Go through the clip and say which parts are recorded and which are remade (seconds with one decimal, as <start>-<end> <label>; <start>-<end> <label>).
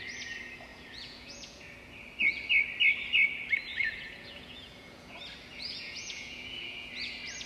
0.0-0.7 recorded; 0.7-1.6 remade; 1.6-3.7 recorded; 3.7-5.1 remade; 5.1-5.5 recorded; 5.5-6.9 remade; 6.9-7.5 recorded